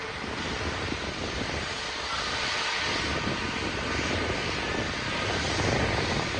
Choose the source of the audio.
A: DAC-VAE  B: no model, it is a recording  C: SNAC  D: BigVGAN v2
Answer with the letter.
B